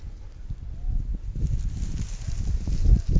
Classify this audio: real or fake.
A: real